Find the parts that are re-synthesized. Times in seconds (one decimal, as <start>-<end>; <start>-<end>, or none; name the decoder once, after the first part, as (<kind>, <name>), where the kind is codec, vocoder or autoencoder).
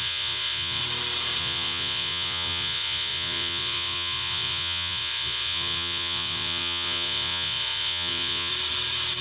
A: 0.0-0.8 (vocoder, Vocos); 1.4-8.5